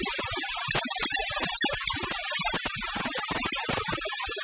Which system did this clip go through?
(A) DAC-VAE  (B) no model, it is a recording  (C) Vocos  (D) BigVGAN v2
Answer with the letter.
B